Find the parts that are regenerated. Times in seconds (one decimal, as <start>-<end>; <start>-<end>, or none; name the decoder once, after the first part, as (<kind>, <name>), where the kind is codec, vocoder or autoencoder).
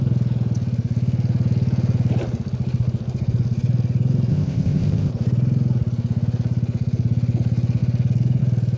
4.3-5.1 (codec, ZipCodec)